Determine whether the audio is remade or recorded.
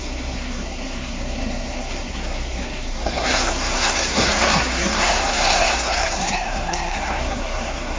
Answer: remade